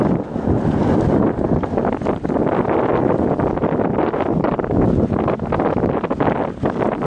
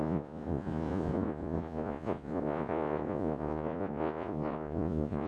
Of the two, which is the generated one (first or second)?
second